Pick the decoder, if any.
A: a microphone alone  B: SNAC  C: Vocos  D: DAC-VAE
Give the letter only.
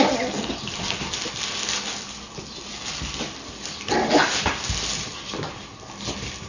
A